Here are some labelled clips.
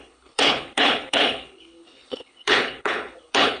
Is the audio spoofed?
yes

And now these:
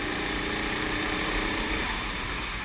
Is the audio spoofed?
yes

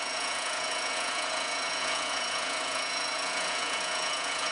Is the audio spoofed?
yes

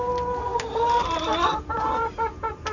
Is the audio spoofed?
no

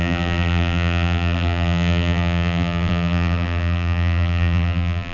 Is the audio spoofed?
yes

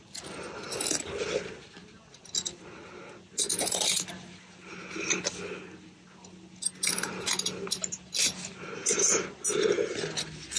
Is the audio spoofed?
no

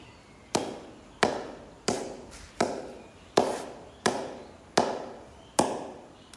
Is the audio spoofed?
no